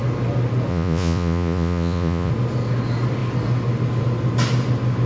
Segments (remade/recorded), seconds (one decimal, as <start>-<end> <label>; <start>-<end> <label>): 0.0-0.7 recorded; 0.7-2.3 remade; 2.3-5.1 recorded